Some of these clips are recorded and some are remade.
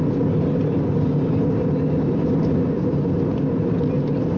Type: recorded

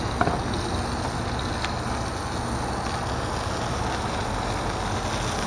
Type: recorded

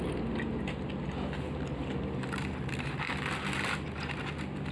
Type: recorded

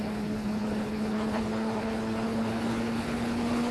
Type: remade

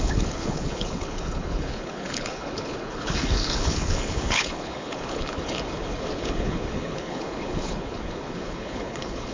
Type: remade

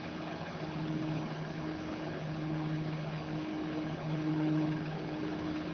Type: remade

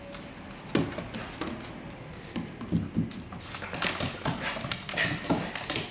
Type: recorded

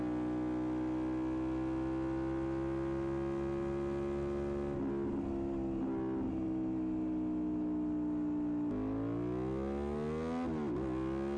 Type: recorded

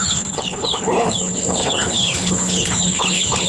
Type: remade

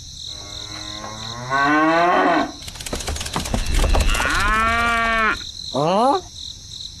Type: recorded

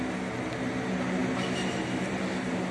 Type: recorded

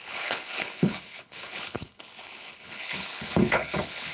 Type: remade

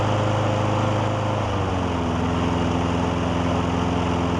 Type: recorded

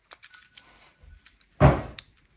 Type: recorded